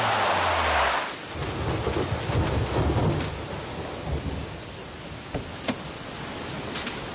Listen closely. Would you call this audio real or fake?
real